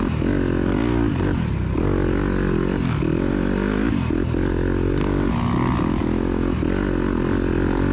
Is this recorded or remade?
recorded